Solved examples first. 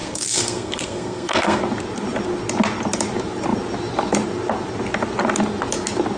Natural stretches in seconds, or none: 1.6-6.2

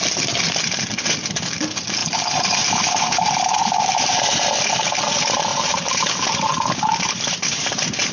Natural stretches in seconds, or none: 0.0-2.0; 4.2-5.5

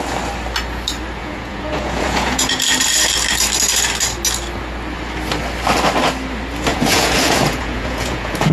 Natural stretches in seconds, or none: 0.0-1.2; 2.6-6.7

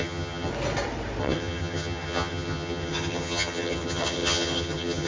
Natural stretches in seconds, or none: 0.5-1.2

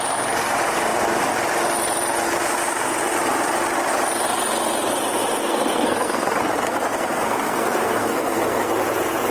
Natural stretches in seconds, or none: 0.0-5.4; 8.7-9.3

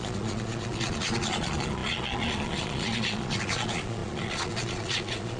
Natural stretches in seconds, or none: none

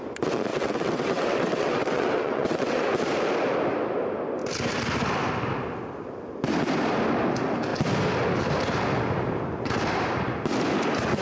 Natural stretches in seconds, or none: 0.0-0.5; 2.9-11.2